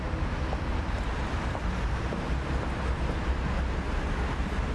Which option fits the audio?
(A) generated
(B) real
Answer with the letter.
B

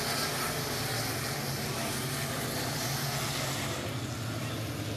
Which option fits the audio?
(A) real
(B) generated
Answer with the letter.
A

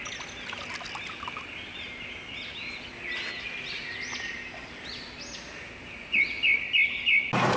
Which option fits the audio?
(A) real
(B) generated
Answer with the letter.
A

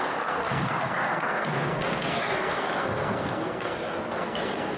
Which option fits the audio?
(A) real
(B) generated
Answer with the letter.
B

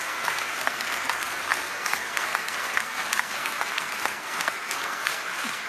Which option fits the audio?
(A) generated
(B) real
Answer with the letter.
A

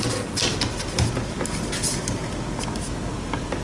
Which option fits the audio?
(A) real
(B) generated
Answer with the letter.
A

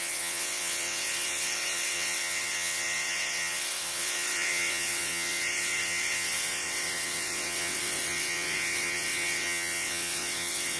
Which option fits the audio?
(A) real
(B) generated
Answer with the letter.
B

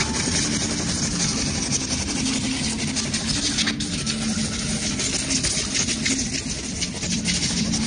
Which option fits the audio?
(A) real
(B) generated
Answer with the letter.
A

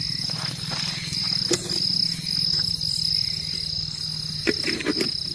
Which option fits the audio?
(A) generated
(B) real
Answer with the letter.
B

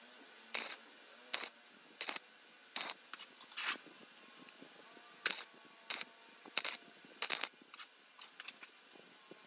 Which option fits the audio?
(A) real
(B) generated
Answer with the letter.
A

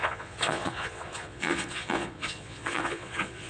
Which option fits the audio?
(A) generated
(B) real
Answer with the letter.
A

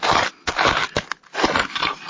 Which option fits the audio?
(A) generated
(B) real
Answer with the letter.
B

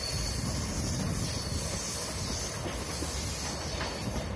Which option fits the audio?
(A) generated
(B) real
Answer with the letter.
B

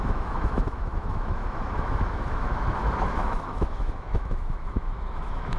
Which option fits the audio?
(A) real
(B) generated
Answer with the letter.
B